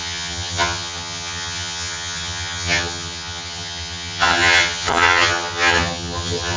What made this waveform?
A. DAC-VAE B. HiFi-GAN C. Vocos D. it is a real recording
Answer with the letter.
B